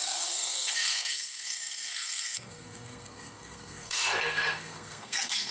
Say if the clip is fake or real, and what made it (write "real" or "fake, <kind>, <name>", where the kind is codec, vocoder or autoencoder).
fake, codec, SNAC